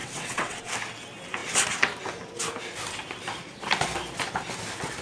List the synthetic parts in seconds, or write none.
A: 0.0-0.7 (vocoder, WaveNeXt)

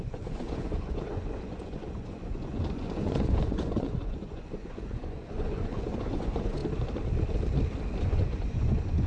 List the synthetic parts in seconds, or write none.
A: 0.0-6.6 (vocoder, Vocos); 8.0-9.1

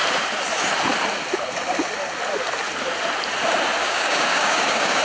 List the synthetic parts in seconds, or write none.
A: 3.8-5.0 (codec, DAC)

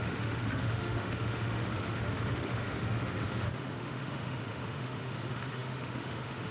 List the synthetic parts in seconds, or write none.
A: 0.0-6.5 (autoencoder, DAC-VAE)

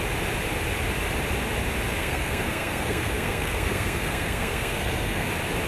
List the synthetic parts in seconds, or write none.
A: 1.9-5.3 (codec, SNAC)

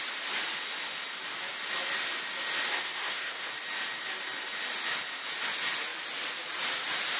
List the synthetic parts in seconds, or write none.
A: 2.7-3.5 (codec, SNAC)